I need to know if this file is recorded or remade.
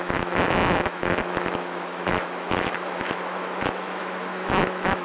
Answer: remade